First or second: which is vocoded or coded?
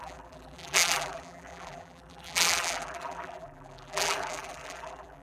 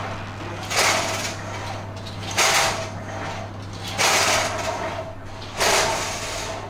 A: first